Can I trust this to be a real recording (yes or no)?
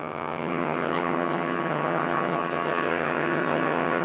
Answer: no